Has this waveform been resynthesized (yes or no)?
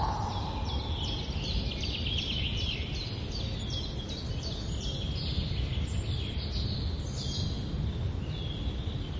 no